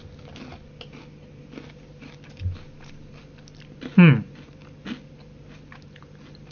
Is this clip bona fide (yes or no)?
yes